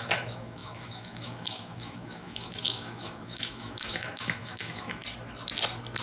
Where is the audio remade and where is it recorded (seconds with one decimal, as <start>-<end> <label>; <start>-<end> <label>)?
0.0-5.0 remade; 5.0-6.0 recorded